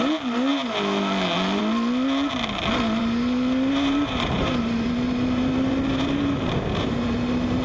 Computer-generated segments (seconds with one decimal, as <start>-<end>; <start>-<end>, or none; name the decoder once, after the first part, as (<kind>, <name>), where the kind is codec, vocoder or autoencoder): 3.0-7.6 (vocoder, BigVGAN v2)